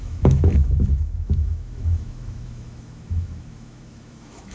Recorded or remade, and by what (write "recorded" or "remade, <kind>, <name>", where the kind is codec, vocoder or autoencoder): remade, autoencoder, DAC-VAE